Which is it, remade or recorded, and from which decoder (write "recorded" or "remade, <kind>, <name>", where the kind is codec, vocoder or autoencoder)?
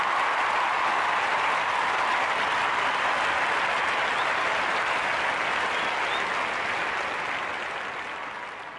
recorded